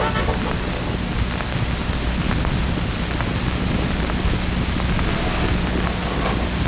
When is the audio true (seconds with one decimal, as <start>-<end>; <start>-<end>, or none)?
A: 0.0-6.7